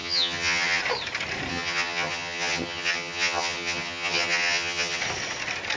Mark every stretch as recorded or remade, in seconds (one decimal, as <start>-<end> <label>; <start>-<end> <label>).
0.0-0.8 remade; 0.8-1.5 recorded; 1.5-5.0 remade; 5.0-5.8 recorded